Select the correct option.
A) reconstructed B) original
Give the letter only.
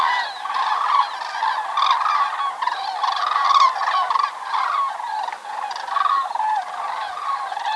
B